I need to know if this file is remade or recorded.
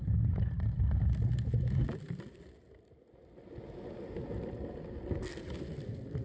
recorded